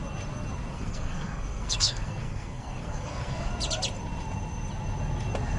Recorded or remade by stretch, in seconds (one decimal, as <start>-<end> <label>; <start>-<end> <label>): 0.0-0.7 recorded; 0.7-3.5 remade; 3.5-5.6 recorded